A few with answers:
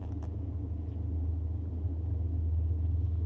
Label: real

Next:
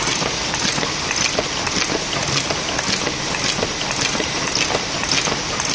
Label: real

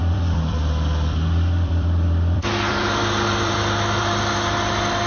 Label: fake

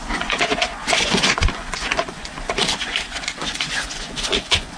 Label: fake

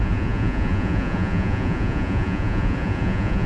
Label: fake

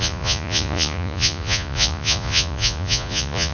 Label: fake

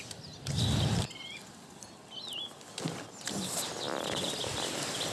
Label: real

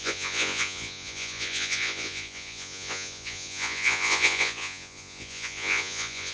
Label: fake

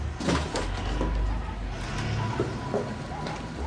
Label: real